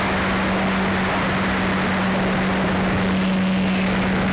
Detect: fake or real real